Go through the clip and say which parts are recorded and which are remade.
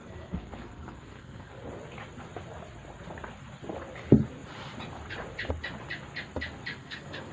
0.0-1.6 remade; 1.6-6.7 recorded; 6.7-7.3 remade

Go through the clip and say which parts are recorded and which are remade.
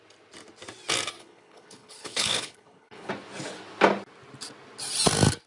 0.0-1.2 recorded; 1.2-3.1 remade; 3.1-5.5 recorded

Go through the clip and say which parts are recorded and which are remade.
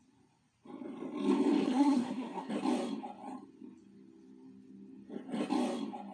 0.0-1.6 recorded; 1.6-2.5 remade; 2.5-6.1 recorded